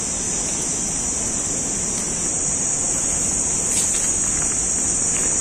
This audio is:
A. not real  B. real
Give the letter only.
B